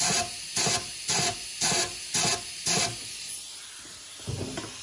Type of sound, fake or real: real